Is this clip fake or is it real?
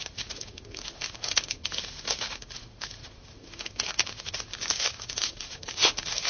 fake